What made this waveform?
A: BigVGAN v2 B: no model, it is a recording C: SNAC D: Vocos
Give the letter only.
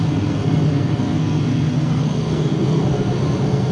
C